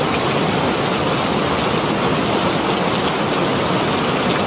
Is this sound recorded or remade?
recorded